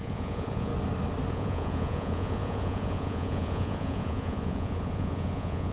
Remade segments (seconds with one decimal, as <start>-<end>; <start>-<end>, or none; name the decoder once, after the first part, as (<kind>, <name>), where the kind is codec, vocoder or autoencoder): 0.0-0.7 (vocoder, Vocos); 1.3-5.7